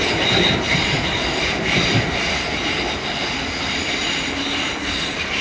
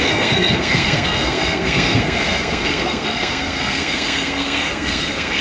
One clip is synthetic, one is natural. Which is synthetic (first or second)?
second